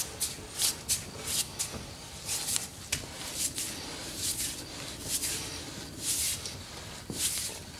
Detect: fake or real real